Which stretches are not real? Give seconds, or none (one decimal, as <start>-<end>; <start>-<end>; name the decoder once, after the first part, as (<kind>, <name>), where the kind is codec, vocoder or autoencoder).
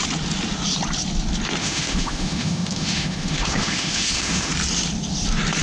1.6-4.5 (autoencoder, DAC-VAE)